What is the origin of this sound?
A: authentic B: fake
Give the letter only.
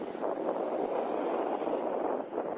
A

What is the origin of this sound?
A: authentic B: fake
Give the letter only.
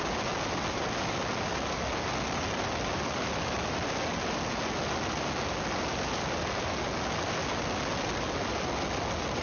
A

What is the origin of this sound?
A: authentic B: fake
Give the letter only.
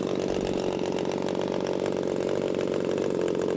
A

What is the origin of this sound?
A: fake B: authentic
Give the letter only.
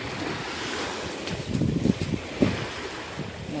B